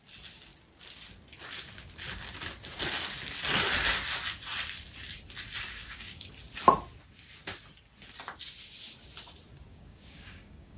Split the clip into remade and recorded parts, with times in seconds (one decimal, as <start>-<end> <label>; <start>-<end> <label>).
0.0-5.8 recorded; 5.8-6.3 remade; 6.3-9.7 recorded; 9.7-10.8 remade

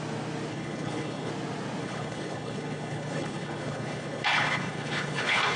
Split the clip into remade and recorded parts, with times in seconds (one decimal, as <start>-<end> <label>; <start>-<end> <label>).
0.0-0.5 recorded; 0.5-1.3 remade; 1.3-1.8 recorded; 1.8-5.6 remade